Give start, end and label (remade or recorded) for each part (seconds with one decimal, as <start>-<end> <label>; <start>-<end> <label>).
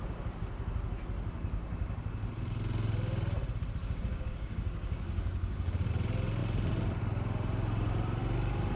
0.0-3.8 recorded; 3.8-5.9 remade; 5.9-8.8 recorded